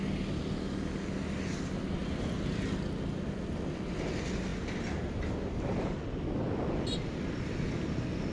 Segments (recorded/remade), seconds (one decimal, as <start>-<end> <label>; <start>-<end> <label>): 0.0-8.3 recorded